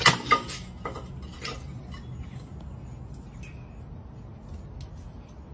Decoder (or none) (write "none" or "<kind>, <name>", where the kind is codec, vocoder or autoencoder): none